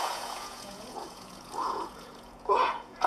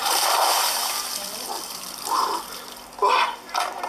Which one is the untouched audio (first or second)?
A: second